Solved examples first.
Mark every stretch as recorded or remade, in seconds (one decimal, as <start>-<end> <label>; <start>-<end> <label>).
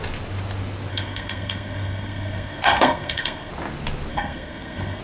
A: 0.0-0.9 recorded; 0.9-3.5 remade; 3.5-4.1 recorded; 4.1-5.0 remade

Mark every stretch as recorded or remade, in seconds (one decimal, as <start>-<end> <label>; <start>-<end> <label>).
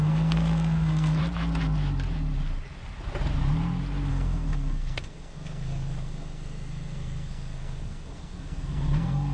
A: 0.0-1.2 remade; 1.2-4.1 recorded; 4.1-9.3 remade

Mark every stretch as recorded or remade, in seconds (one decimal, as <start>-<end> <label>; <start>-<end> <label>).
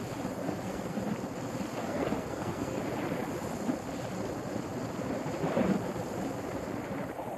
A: 0.0-0.4 recorded; 0.4-1.0 remade; 1.0-1.8 recorded; 1.8-2.8 remade; 2.8-7.4 recorded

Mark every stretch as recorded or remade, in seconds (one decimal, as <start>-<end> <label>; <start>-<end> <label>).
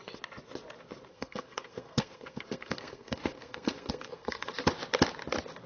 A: 0.0-1.1 recorded; 1.1-4.5 remade; 4.5-5.7 recorded